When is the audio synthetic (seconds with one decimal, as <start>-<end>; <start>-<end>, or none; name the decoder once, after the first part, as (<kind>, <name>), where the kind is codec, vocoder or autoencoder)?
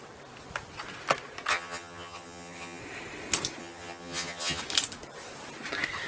1.5-2.8 (vocoder, HiFi-GAN); 3.6-4.6